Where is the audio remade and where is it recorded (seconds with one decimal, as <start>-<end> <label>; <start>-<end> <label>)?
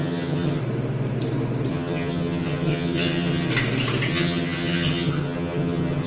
0.0-0.6 remade; 0.6-1.7 recorded; 1.7-3.5 remade; 3.5-4.1 recorded; 4.1-6.1 remade